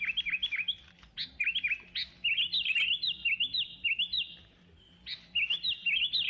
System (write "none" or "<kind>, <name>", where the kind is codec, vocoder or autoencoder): none